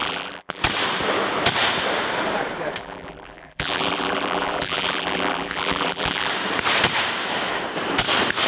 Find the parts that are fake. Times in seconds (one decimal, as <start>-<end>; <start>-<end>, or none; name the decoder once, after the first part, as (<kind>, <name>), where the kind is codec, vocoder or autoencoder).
0.0-0.6 (vocoder, BigVGAN v2); 2.8-6.3